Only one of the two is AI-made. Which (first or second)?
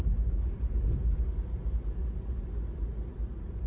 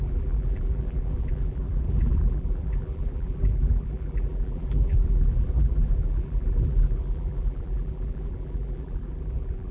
second